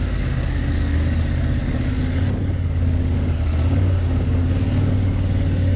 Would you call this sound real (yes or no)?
no